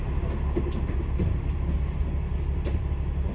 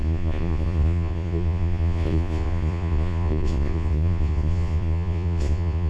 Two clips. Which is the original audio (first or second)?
first